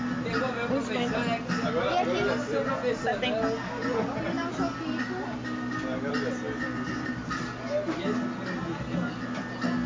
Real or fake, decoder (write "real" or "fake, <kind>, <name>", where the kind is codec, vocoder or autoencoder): real